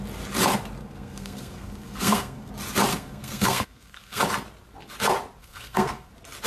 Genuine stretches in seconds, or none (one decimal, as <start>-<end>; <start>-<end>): 0.0-0.8; 2.5-2.9; 4.2-5.4; 6.1-6.5